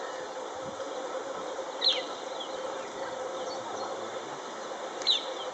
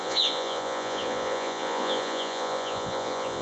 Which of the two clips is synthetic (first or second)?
second